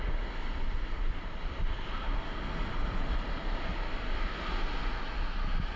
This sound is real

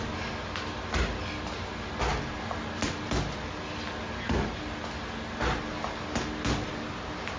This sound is real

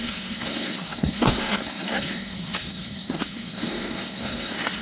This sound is fake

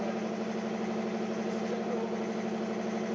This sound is real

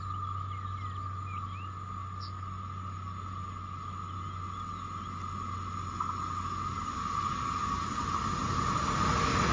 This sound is real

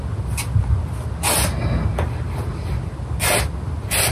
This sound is real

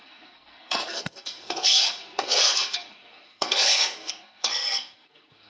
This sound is fake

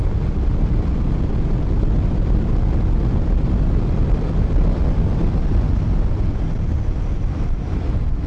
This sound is real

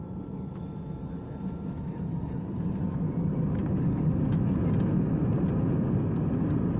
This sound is real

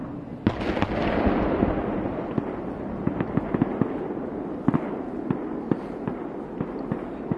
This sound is real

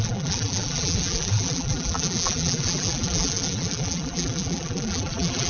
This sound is fake